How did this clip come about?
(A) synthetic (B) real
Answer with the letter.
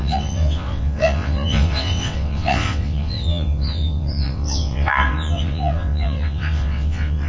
A